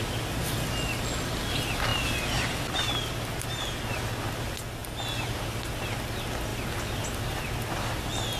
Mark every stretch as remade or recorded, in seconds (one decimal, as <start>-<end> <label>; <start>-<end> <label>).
0.0-8.4 recorded